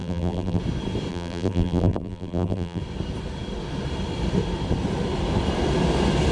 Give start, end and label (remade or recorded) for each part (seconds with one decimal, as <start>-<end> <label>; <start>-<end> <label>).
0.0-0.6 remade; 0.6-1.1 recorded; 1.1-2.8 remade; 2.8-6.3 recorded